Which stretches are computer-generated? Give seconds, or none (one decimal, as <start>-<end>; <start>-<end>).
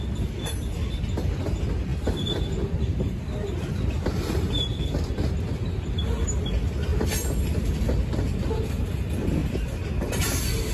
6.9-7.8